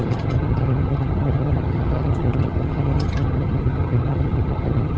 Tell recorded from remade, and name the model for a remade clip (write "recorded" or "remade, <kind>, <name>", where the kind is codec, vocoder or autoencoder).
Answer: remade, vocoder, HiFi-GAN